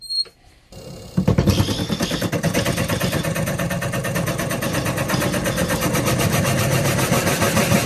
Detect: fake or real fake